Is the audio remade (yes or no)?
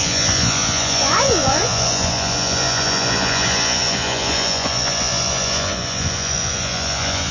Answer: yes